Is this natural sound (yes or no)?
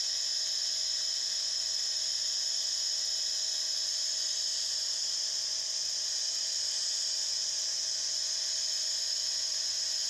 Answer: yes